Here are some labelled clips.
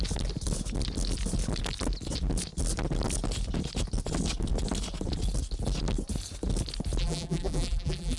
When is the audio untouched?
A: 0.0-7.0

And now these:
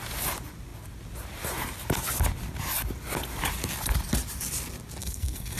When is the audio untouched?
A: 0.0-5.0

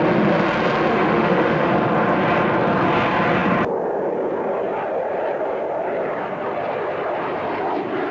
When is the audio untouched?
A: 0.0-0.9; 1.7-8.1

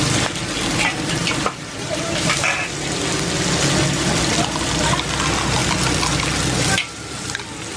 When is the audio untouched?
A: 0.0-7.8

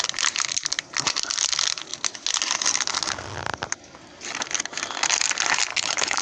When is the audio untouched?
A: 0.0-5.7

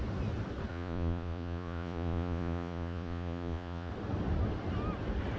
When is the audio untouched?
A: 0.0-0.7; 3.9-5.4

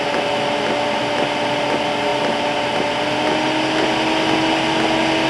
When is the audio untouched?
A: 0.0-5.3

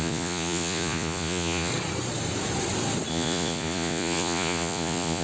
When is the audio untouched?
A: 1.7-3.1